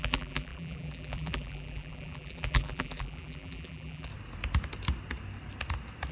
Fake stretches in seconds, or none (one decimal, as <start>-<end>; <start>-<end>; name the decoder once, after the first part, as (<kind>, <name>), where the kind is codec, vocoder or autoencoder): 0.0-4.1 (vocoder, BigVGAN v2)